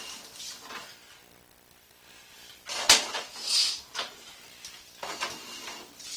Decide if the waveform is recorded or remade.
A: recorded